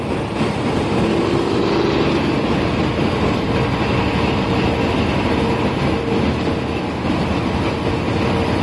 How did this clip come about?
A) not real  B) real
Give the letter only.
B